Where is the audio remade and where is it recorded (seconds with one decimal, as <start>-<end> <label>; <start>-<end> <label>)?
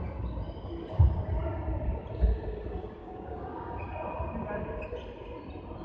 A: 0.0-3.0 recorded; 3.0-3.8 remade; 3.8-5.8 recorded